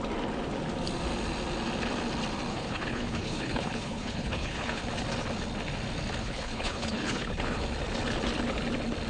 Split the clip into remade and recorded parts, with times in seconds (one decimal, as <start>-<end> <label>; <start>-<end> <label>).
0.0-2.5 recorded; 2.5-4.8 remade; 4.8-6.2 recorded; 6.2-7.6 remade; 7.6-9.1 recorded